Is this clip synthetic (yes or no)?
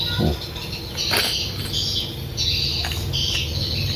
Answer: no